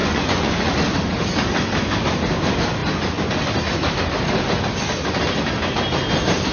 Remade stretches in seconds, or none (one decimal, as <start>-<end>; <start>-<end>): 0.0-0.7